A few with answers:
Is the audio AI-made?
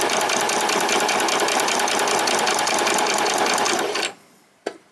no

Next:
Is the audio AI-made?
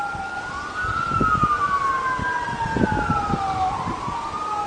no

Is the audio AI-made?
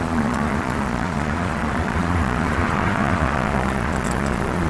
yes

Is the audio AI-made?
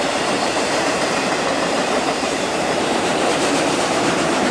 yes